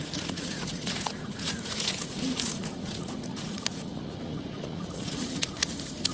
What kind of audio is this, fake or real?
fake